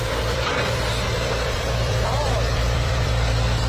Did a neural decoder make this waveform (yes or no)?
yes